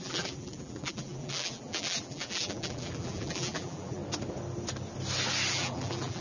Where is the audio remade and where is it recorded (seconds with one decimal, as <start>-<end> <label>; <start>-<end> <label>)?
0.0-4.0 remade; 4.0-5.5 recorded; 5.5-6.2 remade